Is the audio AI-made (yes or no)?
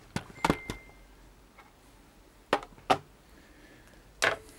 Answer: no